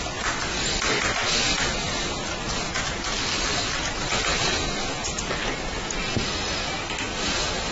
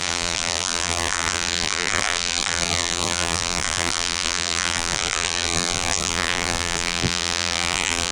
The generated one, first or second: second